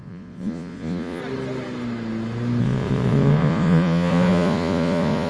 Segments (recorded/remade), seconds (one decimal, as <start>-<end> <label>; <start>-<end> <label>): 0.0-1.2 remade; 1.2-2.6 recorded; 2.6-5.3 remade